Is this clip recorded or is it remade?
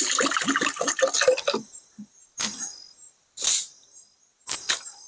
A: recorded